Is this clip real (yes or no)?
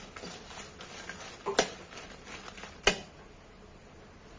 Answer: yes